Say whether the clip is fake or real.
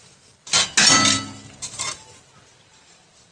real